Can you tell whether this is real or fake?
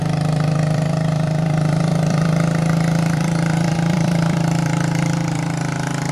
fake